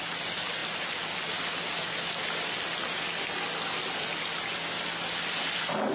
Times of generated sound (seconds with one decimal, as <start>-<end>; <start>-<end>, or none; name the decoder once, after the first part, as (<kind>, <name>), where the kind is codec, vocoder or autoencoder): none